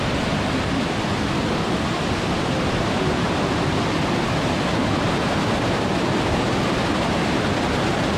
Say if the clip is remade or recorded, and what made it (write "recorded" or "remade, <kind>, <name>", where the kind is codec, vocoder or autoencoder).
recorded